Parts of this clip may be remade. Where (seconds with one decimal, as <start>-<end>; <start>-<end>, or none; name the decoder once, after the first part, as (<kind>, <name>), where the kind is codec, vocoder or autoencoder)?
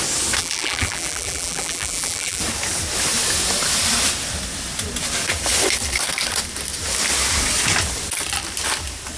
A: 0.4-2.4 (vocoder, BigVGAN v2)